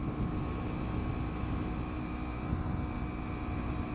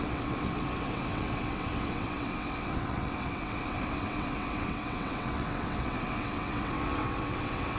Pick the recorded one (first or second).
first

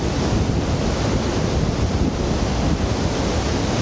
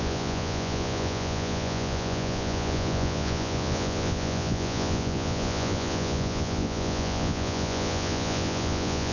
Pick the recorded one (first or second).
first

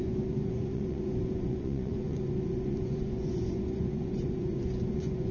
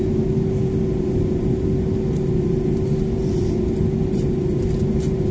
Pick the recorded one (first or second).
second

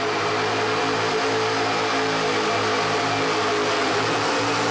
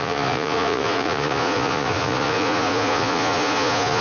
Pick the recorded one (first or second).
first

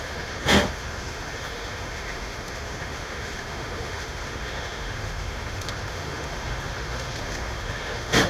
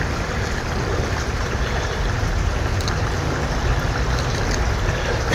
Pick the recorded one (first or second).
second